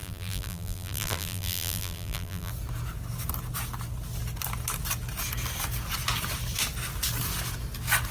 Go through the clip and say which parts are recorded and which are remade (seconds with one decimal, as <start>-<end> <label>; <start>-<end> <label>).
0.0-2.5 remade; 2.5-8.1 recorded